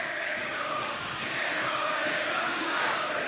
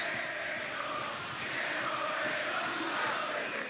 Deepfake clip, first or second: first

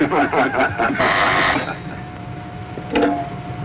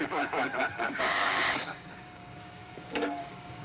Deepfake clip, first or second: second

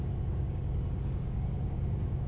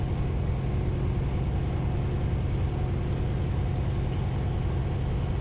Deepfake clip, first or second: first